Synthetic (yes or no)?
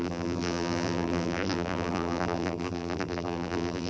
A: yes